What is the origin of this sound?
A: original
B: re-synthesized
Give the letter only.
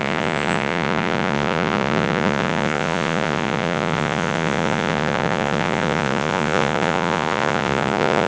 B